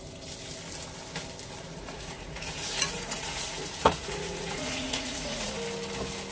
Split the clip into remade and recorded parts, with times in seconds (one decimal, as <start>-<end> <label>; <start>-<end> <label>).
0.0-1.7 recorded; 1.7-5.5 remade; 5.5-6.3 recorded